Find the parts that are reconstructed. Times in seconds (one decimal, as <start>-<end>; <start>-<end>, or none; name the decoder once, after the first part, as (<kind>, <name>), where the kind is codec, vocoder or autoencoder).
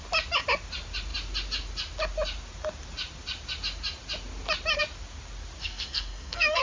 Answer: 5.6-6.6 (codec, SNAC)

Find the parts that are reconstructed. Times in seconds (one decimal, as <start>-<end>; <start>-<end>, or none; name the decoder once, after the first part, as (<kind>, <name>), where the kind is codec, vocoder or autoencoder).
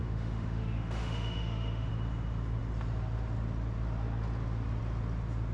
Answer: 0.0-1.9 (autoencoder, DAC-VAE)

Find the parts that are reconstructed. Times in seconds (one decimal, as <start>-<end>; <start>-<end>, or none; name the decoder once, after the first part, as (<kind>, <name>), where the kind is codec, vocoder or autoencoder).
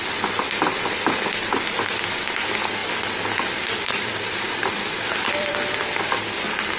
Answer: 2.8-5.6 (vocoder, BigVGAN v2)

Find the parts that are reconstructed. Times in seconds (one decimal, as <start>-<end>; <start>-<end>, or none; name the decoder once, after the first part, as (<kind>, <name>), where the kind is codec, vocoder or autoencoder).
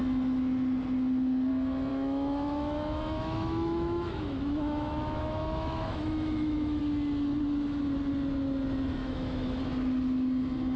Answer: 1.9-6.8 (autoencoder, DAC-VAE); 9.0-9.6